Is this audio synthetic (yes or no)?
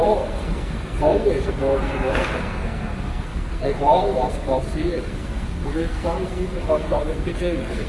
yes